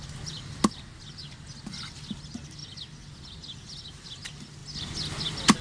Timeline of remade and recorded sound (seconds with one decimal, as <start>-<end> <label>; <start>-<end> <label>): 0.0-5.6 recorded